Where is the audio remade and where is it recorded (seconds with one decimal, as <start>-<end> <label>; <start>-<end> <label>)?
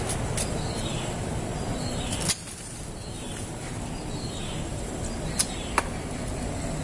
0.0-6.8 recorded